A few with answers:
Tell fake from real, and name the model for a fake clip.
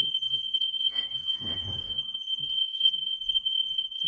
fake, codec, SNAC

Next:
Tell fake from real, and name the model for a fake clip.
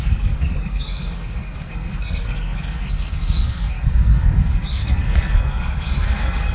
fake, codec, SNAC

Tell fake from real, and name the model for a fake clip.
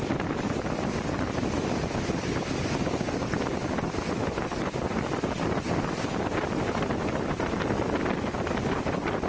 real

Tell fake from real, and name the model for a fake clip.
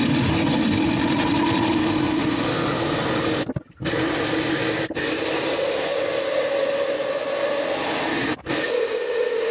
real